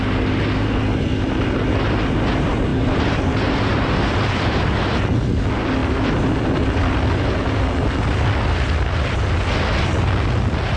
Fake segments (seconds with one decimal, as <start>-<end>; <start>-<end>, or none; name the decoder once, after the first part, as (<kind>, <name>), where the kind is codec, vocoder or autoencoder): 2.7-4.7 (vocoder, BigVGAN v2)

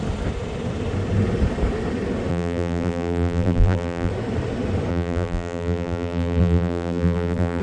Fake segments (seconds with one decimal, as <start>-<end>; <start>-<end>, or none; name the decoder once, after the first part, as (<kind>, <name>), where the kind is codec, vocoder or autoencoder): 2.3-4.1 (vocoder, BigVGAN v2); 4.9-7.6

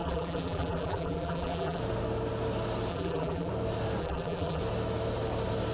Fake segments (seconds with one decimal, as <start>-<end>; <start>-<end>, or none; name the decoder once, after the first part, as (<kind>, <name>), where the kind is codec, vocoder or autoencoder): 0.0-1.8 (vocoder, BigVGAN v2); 2.9-3.5; 4.0-4.6

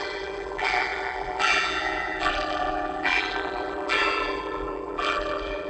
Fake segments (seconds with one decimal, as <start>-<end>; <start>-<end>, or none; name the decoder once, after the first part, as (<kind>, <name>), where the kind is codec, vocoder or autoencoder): 0.0-5.7 (vocoder, BigVGAN v2)